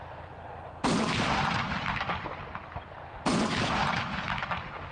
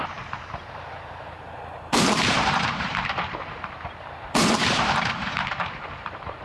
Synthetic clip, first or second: second